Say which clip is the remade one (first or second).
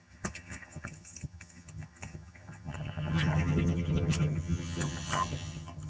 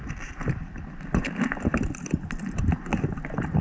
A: first